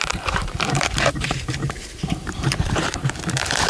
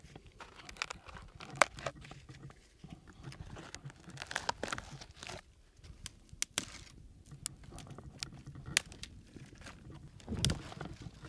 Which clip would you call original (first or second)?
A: second